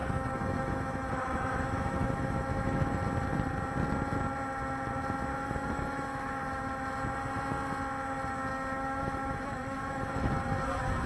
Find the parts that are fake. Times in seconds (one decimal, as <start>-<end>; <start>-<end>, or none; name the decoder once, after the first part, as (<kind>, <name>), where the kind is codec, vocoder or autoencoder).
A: 0.0-2.9 (autoencoder, DAC-VAE); 5.3-6.8; 8.5-10.3